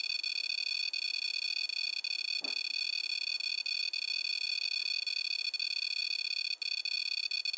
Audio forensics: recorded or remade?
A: recorded